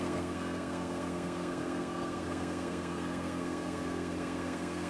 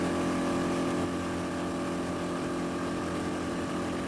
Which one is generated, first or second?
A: first